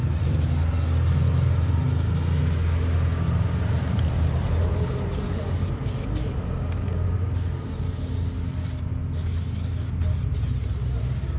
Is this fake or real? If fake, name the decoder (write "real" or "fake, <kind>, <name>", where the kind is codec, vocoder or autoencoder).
real